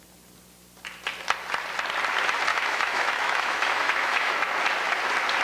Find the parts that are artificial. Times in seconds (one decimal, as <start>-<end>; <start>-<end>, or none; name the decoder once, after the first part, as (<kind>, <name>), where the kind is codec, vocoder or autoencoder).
2.5-4.5 (autoencoder, DAC-VAE)